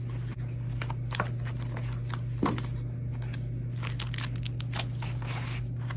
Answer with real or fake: real